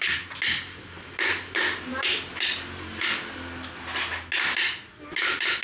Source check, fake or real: real